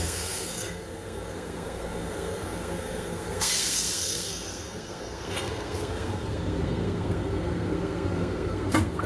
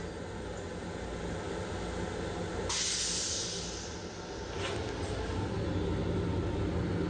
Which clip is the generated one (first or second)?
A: first